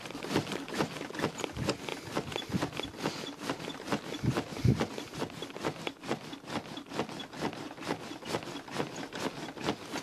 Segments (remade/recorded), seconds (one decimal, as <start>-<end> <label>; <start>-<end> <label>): 0.0-10.0 recorded